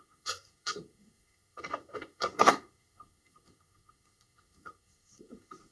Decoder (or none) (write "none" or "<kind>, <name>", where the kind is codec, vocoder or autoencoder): codec, SNAC